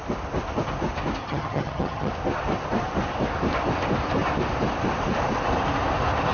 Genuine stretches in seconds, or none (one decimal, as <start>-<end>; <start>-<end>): 0.0-1.2; 2.1-6.3

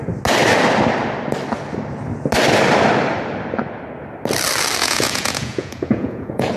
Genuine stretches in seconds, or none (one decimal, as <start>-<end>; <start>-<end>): 0.0-4.8

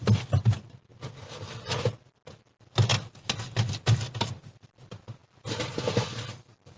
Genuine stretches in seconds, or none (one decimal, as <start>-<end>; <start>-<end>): 0.0-6.8